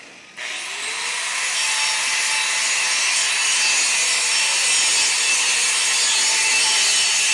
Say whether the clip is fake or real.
real